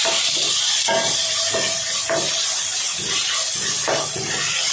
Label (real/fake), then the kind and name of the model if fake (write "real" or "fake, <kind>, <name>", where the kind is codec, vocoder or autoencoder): real